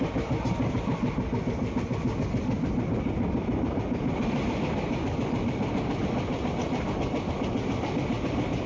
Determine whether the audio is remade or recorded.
recorded